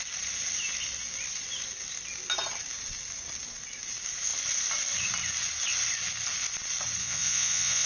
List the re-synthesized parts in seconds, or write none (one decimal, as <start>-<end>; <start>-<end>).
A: 7.0-7.9